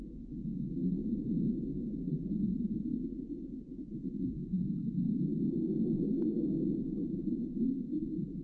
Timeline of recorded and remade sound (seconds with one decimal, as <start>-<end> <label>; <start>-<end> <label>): 0.0-5.3 remade; 5.3-7.2 recorded; 7.2-8.4 remade